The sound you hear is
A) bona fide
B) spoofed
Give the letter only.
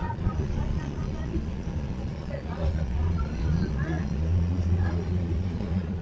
B